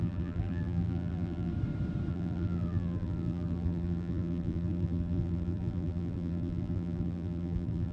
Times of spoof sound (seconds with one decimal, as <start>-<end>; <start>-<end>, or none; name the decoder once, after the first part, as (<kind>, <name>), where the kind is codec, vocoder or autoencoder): 0.0-1.5 (vocoder, BigVGAN v2); 2.1-7.9